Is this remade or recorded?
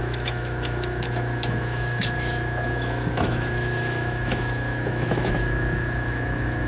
remade